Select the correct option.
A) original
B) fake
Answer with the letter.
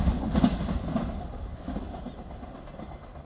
A